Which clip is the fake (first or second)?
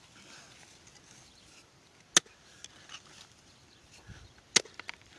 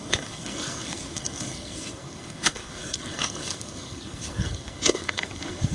second